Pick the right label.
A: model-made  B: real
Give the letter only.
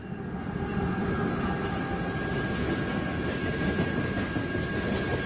B